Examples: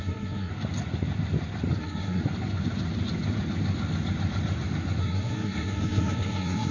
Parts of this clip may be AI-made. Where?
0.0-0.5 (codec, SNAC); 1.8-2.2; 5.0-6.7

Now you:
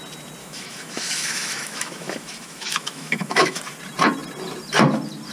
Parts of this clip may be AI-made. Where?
0.4-3.6 (autoencoder, DAC-VAE)

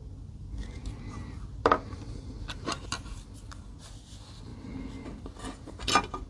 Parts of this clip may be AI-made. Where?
none